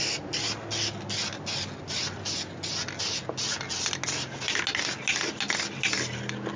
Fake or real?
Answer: real